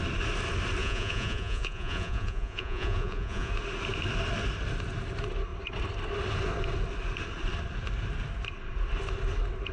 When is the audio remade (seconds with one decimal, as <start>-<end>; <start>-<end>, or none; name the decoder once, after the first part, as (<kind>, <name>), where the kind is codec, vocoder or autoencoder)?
0.8-3.5 (vocoder, Vocos)